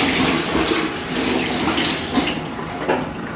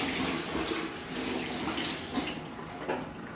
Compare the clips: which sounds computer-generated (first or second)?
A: first